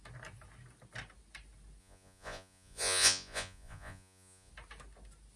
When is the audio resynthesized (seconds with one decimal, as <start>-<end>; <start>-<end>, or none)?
1.8-4.5